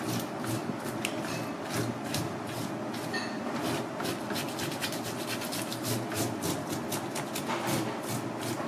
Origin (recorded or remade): recorded